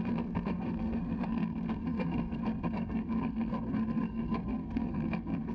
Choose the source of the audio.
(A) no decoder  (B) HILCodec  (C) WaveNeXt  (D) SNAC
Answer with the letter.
D